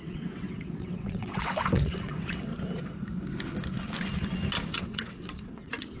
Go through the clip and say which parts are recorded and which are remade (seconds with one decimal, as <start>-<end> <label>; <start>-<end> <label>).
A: 0.0-2.5 remade; 2.5-4.7 recorded; 4.7-6.0 remade